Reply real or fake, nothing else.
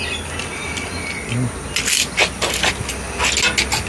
real